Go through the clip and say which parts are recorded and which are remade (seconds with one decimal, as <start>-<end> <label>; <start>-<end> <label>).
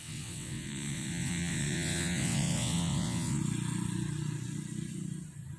0.0-3.4 remade; 3.4-5.6 recorded